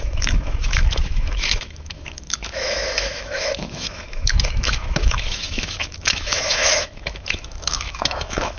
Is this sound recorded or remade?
remade